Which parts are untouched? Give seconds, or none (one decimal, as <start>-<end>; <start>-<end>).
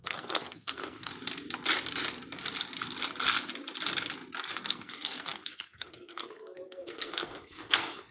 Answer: 1.1-4.5